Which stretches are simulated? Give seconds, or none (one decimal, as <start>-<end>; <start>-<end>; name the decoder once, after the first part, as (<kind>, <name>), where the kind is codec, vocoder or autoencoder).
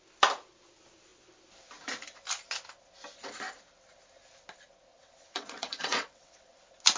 4.9-6.6 (vocoder, WaveNeXt)